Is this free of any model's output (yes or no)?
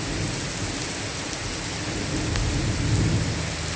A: yes